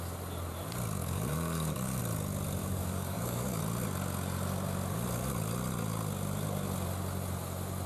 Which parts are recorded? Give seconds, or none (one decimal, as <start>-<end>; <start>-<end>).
0.0-1.0; 2.0-2.6; 3.6-7.9